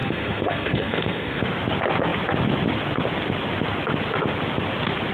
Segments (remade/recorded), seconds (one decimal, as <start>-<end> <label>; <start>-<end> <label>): 0.0-1.4 remade; 1.4-5.1 recorded